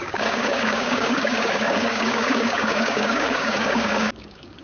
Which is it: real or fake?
fake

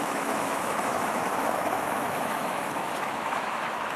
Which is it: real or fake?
fake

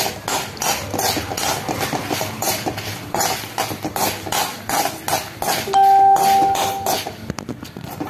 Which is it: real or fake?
real